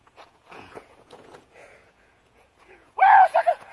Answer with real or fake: fake